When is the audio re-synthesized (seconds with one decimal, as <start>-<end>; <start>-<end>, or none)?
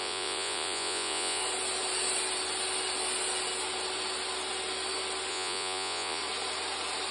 0.0-1.4; 5.3-6.2